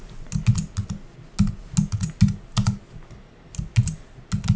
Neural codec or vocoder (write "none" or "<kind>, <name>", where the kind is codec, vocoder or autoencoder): none